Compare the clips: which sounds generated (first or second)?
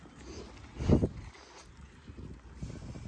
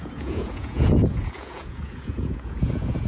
second